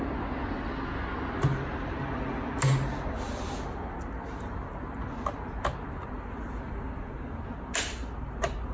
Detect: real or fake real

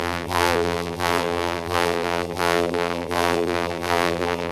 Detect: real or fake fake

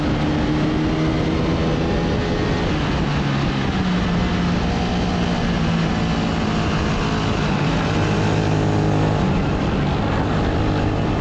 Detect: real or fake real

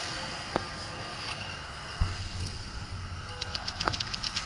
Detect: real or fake fake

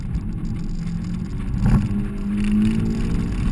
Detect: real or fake real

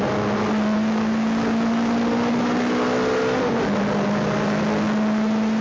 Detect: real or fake real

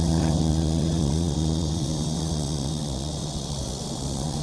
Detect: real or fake fake